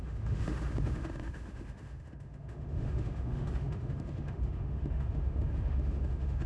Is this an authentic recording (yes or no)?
no